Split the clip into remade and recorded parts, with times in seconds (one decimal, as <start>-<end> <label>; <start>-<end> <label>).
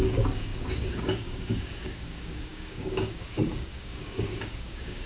0.0-5.1 remade